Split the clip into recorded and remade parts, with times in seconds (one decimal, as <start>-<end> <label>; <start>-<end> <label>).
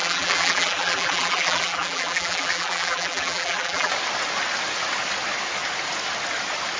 0.0-3.9 remade; 3.9-6.8 recorded